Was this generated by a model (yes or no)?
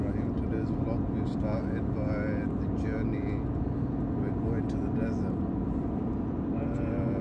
no